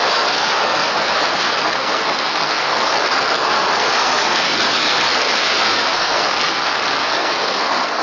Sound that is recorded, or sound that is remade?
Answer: remade